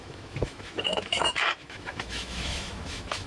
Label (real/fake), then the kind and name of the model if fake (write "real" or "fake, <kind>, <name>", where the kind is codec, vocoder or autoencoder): fake, autoencoder, DAC-VAE